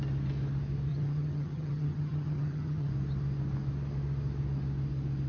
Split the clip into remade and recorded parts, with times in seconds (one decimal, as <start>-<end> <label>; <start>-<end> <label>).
0.0-0.9 recorded; 0.9-2.9 remade; 2.9-5.3 recorded